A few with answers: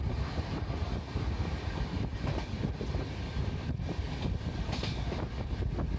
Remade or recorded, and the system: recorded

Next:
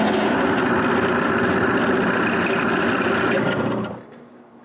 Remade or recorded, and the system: recorded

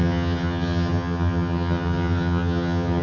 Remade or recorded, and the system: remade, vocoder, HiFi-GAN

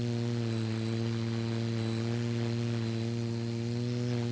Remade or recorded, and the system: recorded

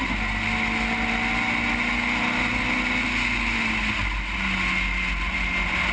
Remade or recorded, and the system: recorded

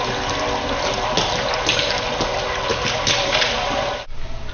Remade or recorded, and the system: recorded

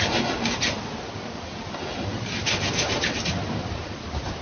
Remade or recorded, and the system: recorded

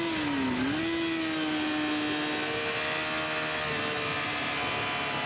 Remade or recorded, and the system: recorded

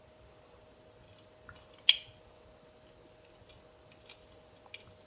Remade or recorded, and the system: recorded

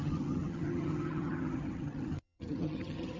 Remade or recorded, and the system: remade, vocoder, HiFi-GAN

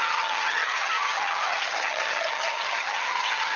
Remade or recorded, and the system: remade, vocoder, HiFi-GAN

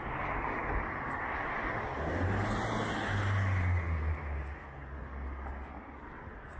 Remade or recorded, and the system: recorded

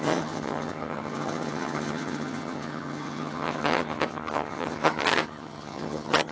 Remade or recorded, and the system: remade, vocoder, HiFi-GAN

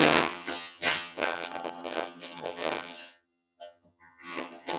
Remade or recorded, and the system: remade, vocoder, HiFi-GAN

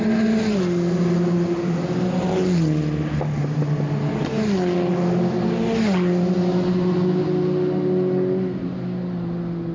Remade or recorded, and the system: recorded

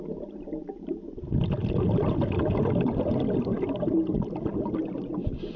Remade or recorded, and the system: recorded